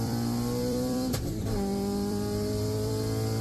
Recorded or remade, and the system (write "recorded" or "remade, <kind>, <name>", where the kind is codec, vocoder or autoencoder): remade, vocoder, BigVGAN v2